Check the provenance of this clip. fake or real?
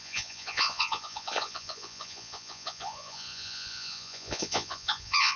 fake